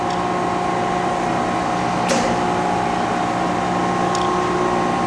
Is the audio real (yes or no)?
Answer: yes